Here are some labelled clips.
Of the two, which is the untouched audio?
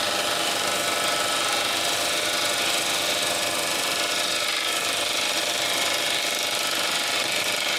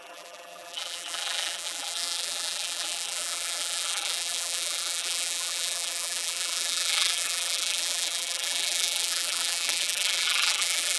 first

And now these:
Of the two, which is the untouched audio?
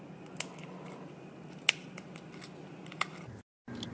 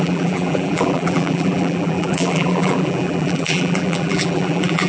first